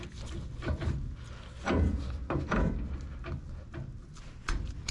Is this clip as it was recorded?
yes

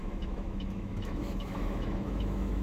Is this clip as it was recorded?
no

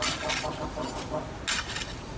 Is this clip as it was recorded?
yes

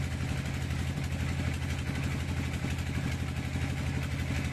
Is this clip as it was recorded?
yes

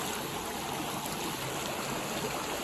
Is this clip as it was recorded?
yes